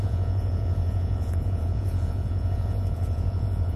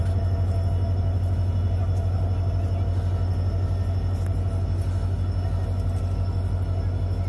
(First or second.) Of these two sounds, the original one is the second